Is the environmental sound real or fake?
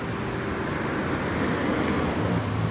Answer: real